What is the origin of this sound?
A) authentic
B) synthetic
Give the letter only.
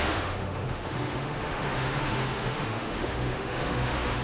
B